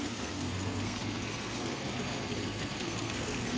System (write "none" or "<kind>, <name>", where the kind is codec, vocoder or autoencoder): codec, SNAC